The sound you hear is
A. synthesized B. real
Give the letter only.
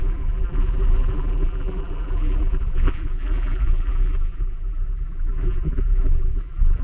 A